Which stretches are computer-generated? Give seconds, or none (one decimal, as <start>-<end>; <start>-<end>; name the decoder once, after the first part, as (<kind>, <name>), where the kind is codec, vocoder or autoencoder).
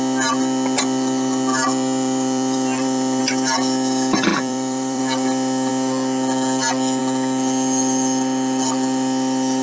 1.5-3.2 (vocoder, BigVGAN v2); 4.3-5.0